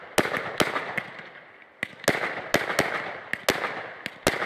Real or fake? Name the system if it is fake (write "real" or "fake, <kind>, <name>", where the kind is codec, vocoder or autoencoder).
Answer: real